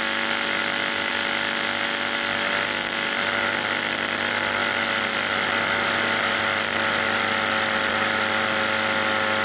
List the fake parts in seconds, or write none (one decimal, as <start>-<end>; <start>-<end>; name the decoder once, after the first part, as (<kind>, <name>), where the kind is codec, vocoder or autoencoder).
none